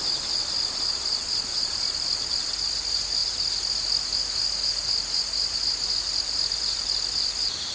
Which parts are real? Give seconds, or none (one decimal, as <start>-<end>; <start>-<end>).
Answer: 0.0-7.7